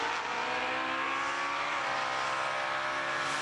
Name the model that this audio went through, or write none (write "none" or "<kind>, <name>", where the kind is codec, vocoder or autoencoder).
none